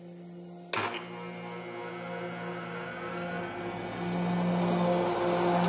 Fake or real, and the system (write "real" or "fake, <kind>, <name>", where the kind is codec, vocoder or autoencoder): real